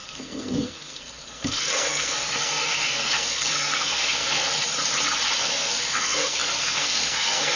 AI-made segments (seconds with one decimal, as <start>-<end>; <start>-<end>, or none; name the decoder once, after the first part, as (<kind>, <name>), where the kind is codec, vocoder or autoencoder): 0.0-4.5 (codec, SNAC); 5.4-7.6